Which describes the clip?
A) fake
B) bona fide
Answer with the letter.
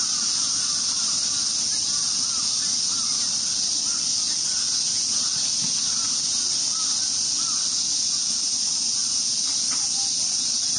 B